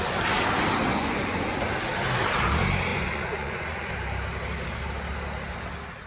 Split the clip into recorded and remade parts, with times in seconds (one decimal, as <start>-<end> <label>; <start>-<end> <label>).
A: 0.0-0.9 recorded; 0.9-1.6 remade; 1.6-2.9 recorded; 2.9-3.9 remade; 3.9-6.1 recorded